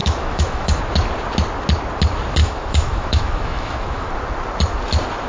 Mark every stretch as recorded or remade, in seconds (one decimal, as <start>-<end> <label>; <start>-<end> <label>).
0.0-0.8 remade; 0.8-2.4 recorded; 2.4-4.1 remade; 4.1-5.3 recorded